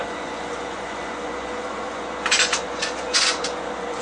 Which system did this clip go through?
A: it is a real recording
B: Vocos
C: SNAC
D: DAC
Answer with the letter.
B